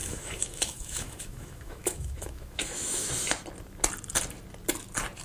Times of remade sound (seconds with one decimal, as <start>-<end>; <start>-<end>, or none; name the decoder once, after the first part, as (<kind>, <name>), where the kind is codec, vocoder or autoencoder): 0.0-3.1 (autoencoder, DAC-VAE)